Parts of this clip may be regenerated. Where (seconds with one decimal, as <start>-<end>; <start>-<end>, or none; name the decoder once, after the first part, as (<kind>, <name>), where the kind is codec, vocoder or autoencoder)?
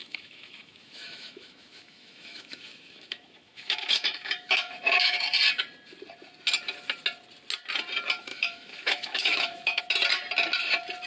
0.0-5.2 (autoencoder, DAC-VAE); 8.3-9.8